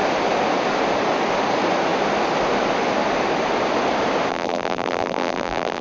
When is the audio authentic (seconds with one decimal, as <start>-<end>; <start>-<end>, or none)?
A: 0.0-4.3